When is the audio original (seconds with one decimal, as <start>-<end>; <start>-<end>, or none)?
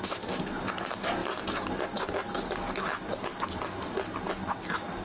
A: 0.0-5.0